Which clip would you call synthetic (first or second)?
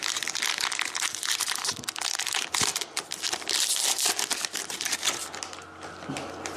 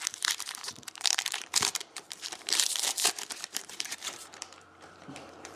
second